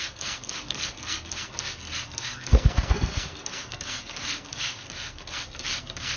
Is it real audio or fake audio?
fake